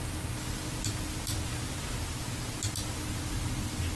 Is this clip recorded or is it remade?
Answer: recorded